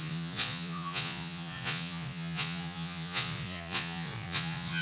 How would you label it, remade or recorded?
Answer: remade